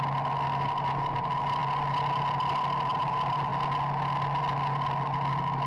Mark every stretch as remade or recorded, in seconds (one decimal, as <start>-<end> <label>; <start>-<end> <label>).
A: 0.0-5.7 recorded